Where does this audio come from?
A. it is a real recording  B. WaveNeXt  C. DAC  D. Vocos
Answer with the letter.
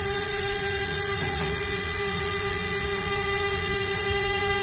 D